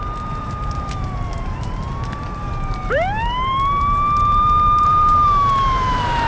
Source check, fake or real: fake